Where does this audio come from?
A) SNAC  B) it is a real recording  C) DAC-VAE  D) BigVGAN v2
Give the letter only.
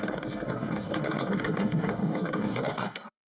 A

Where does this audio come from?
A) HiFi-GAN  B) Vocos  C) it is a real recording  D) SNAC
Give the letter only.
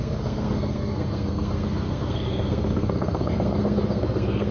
D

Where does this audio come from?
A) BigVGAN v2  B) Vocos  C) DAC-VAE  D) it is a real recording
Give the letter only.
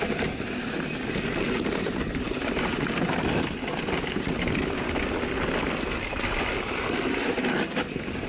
D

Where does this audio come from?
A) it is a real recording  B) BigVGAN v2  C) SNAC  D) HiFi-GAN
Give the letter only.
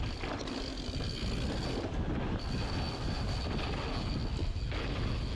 A